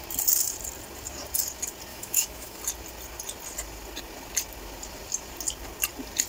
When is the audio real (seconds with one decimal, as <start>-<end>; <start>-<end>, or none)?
0.0-1.9; 2.6-6.3